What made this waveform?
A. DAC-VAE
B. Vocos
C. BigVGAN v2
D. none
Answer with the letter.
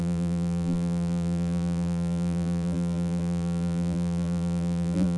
C